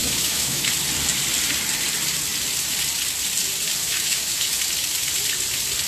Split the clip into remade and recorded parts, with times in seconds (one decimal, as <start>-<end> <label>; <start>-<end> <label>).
0.0-0.7 remade; 0.7-3.8 recorded; 3.8-4.6 remade; 4.6-5.9 recorded